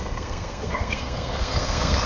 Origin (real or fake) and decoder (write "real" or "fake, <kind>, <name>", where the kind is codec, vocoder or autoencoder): fake, codec, SNAC